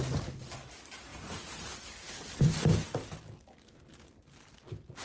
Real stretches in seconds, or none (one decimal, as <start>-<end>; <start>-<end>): 0.0-5.0